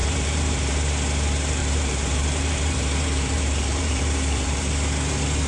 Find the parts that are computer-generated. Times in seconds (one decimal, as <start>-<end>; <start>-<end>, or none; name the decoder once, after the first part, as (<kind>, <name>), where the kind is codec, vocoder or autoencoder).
0.0-0.7 (vocoder, BigVGAN v2); 1.6-4.7